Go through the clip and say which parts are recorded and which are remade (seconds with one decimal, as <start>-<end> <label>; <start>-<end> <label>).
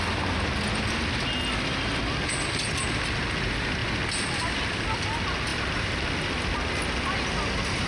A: 0.0-3.8 recorded; 3.8-5.0 remade; 5.0-5.5 recorded; 5.5-6.1 remade; 6.1-7.9 recorded